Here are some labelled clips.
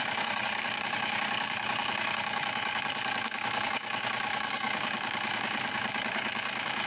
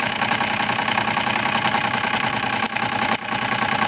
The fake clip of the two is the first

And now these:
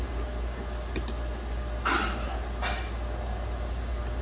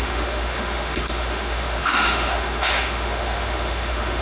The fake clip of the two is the second